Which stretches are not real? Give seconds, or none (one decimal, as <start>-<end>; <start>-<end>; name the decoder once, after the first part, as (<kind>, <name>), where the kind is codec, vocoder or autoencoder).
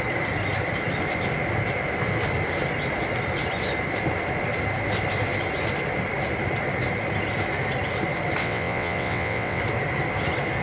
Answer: 8.4-9.6 (vocoder, WaveNeXt)